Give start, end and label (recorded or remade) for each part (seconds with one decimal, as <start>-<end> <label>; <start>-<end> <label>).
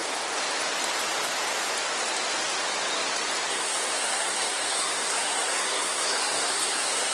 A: 0.0-3.5 recorded; 3.5-7.1 remade